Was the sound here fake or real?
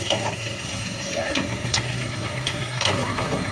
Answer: fake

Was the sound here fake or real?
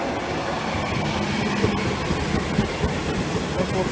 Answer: real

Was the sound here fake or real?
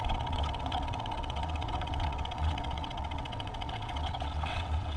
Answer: fake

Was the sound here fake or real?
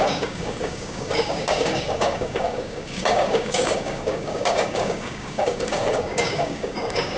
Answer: fake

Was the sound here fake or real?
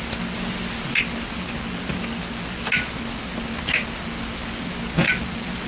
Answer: real